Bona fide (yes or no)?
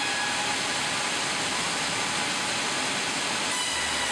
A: yes